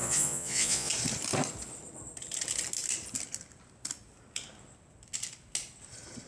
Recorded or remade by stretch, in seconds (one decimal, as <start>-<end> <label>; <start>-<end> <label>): 0.0-0.9 remade; 0.9-6.3 recorded